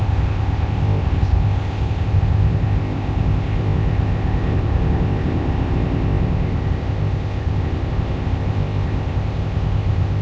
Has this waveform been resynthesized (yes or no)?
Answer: yes